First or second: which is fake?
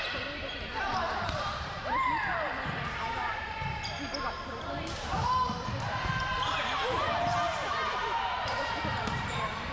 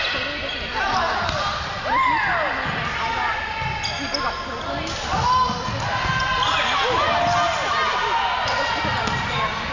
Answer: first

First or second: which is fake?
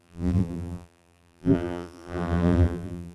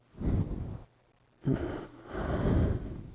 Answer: first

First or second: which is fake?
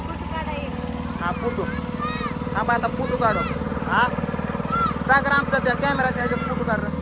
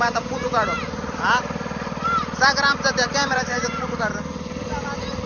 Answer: second